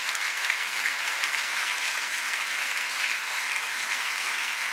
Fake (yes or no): yes